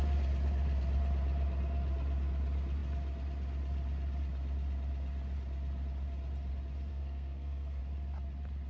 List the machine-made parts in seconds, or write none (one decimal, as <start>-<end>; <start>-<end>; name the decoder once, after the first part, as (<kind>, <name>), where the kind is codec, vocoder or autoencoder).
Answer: 6.9-7.8 (codec, SNAC)